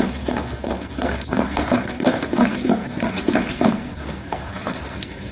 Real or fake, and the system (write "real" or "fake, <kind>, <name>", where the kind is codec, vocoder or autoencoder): fake, codec, SNAC